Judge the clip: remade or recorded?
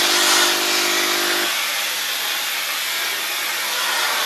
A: recorded